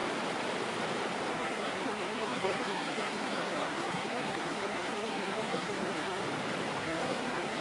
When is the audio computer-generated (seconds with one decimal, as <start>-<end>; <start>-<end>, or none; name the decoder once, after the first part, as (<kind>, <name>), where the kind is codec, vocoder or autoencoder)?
1.3-6.2 (codec, SNAC); 6.8-7.6